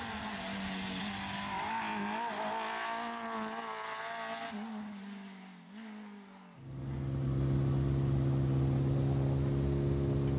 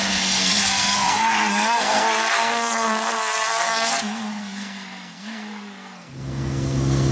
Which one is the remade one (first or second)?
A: second